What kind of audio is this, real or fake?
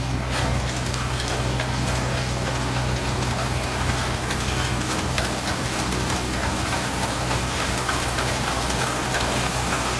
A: fake